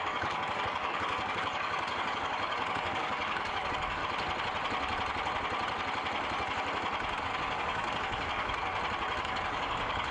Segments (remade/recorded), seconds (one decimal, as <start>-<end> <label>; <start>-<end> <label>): 0.0-4.0 remade; 4.0-7.2 recorded; 7.2-8.7 remade; 8.7-9.2 recorded; 9.2-10.1 remade